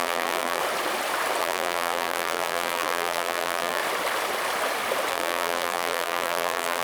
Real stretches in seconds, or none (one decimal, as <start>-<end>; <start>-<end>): 0.6-1.4; 3.8-5.1